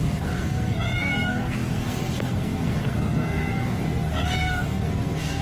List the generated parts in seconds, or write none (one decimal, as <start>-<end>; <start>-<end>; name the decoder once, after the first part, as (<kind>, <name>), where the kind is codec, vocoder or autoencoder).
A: 0.0-5.4 (codec, SNAC)

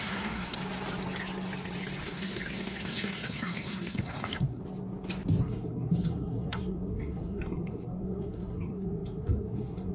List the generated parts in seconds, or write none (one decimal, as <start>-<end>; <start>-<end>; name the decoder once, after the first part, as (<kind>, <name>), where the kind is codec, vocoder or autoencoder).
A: 0.0-0.6 (codec, SNAC); 2.0-4.6; 5.4-9.9

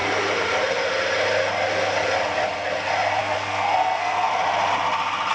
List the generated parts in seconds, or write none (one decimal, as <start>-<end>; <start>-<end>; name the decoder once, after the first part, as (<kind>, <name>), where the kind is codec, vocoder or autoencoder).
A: 3.2-4.3 (codec, SNAC)